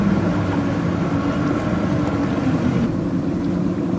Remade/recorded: recorded